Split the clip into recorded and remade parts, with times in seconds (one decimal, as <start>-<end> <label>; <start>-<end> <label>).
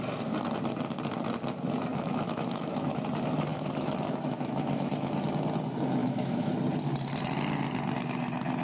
0.0-1.9 recorded; 1.9-3.0 remade; 3.0-3.5 recorded; 3.5-5.1 remade; 5.1-6.0 recorded; 6.0-6.5 remade; 6.5-8.6 recorded